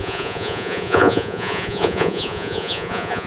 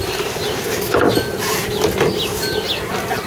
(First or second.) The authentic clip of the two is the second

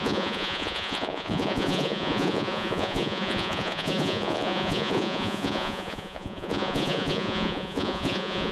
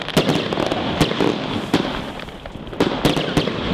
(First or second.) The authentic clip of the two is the second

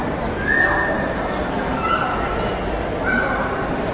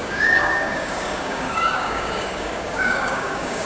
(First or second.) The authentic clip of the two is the first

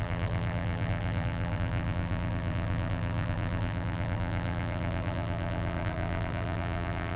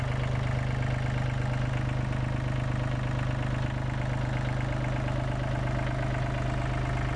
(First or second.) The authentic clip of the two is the second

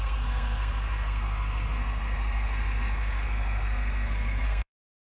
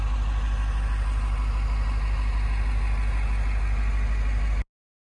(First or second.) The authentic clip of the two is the second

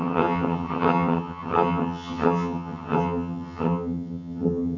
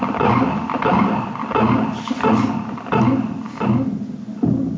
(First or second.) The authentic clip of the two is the second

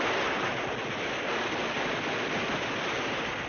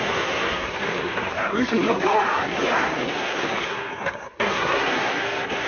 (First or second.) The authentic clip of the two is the first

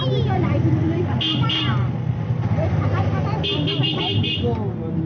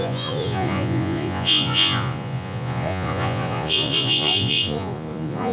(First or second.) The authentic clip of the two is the first